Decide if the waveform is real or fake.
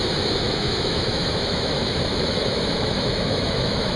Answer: fake